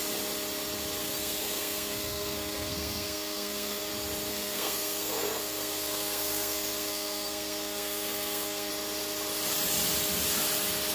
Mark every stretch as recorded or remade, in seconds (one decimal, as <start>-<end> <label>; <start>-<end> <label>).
0.0-1.0 recorded; 1.0-3.9 remade; 3.9-4.3 recorded; 4.3-8.7 remade; 8.7-10.9 recorded